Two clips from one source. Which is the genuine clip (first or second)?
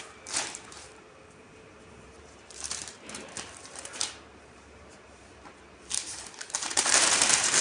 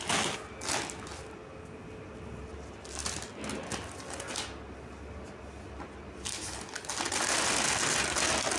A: second